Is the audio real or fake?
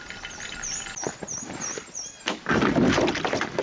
real